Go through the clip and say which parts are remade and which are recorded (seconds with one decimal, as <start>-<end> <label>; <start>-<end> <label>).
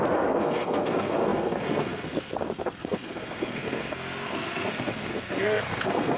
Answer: 0.0-6.2 remade